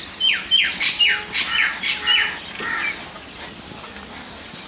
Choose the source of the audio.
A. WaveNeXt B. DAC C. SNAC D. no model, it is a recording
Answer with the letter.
D